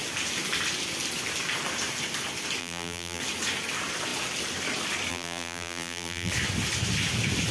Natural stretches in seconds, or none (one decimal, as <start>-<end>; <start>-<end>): 0.0-2.6; 3.2-5.1; 6.3-7.5